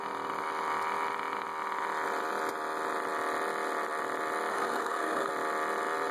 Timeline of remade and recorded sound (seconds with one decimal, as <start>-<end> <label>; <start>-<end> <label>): 0.0-4.5 recorded; 4.5-5.3 remade; 5.3-6.1 recorded